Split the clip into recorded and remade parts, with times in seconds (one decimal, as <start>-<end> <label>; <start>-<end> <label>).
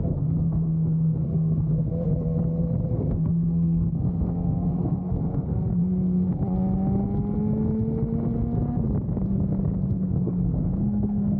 0.0-1.9 remade; 1.9-2.9 recorded; 2.9-6.4 remade; 6.4-9.9 recorded; 9.9-11.4 remade